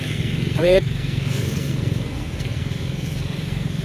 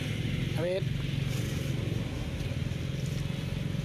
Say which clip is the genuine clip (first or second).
second